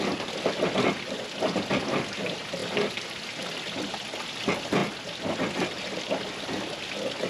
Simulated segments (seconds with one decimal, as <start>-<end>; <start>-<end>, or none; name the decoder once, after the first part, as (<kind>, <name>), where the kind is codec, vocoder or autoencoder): 4.8-5.5 (vocoder, BigVGAN v2)